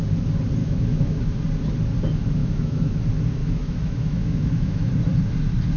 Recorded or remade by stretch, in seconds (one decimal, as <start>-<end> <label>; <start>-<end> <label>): 0.0-0.6 recorded; 0.6-1.4 remade; 1.4-2.4 recorded; 2.4-3.0 remade; 3.0-3.4 recorded; 3.4-4.9 remade; 4.9-5.8 recorded